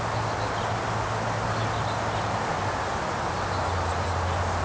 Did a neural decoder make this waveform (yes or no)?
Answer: no